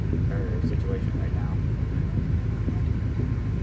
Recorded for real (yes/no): yes